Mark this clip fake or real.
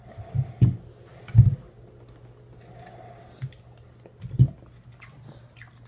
real